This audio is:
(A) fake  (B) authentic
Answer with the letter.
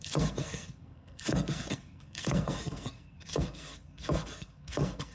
A